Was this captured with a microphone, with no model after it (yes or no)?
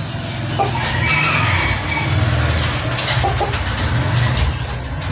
yes